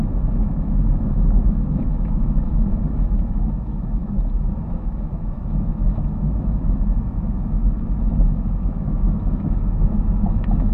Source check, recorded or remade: remade